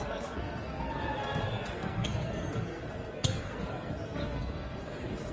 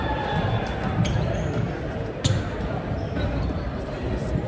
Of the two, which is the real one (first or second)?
second